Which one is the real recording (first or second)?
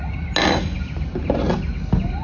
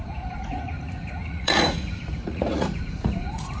first